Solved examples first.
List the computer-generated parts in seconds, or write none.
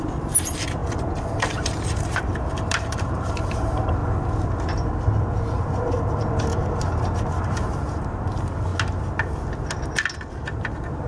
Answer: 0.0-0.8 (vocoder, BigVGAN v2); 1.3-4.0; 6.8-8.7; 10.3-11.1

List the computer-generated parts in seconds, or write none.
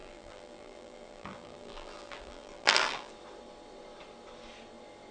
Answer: 0.0-3.1 (vocoder, BigVGAN v2)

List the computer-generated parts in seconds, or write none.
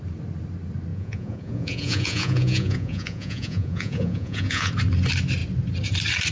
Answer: 0.9-4.7 (vocoder, Vocos)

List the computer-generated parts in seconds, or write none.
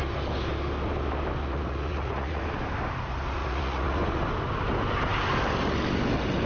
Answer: 1.4-2.4 (vocoder, Vocos); 3.4-4.0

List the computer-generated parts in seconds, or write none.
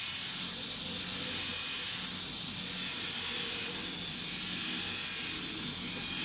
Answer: none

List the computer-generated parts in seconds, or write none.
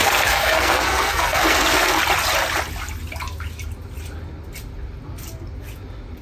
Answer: 0.0-2.0 (codec, SNAC)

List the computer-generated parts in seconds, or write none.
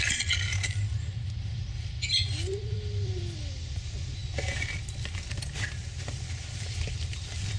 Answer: none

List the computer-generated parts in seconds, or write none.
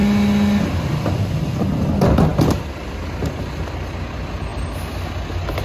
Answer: none